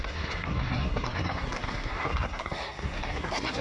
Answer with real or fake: fake